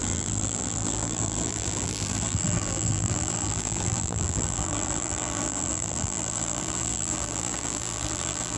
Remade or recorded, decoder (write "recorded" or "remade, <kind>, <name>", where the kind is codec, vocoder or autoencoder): remade, vocoder, BigVGAN v2